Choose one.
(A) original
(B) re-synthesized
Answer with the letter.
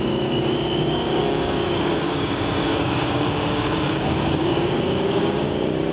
B